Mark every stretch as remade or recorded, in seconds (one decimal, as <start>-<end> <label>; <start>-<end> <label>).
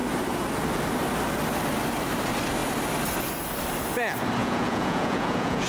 0.0-4.4 recorded; 4.4-5.7 remade